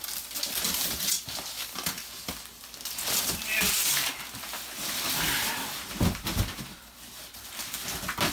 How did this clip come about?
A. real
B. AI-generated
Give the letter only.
A